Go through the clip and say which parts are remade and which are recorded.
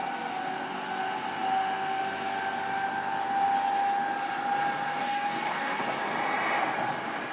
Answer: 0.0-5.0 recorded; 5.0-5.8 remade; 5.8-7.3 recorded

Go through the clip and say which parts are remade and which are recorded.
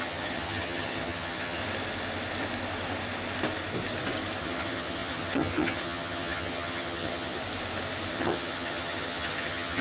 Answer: 0.0-1.6 remade; 1.6-4.4 recorded; 4.4-7.4 remade; 7.4-8.1 recorded; 8.1-9.8 remade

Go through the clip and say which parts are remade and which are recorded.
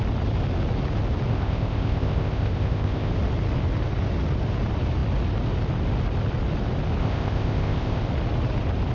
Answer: 0.0-1.3 recorded; 1.3-3.1 remade; 3.1-7.0 recorded; 7.0-8.0 remade; 8.0-8.9 recorded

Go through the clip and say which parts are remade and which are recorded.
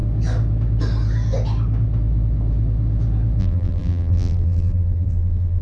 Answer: 0.0-3.4 recorded; 3.4-5.6 remade